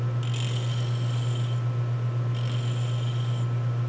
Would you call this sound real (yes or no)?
yes